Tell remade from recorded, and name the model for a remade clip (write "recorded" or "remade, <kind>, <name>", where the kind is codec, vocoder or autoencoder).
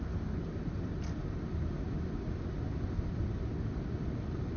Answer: recorded